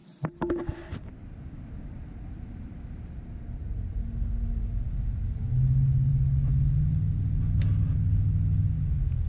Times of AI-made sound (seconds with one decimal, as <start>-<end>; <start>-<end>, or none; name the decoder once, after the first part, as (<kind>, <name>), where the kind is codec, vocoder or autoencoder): none